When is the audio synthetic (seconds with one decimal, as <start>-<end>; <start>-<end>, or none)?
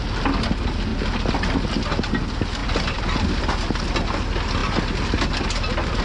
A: 2.6-3.4